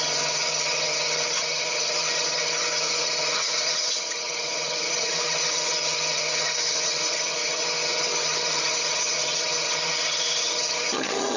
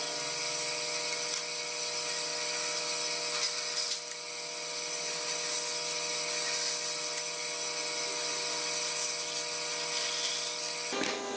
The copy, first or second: first